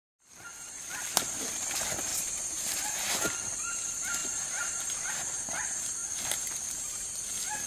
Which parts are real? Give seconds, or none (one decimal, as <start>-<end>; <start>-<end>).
0.0-2.1; 3.1-4.2; 5.1-7.7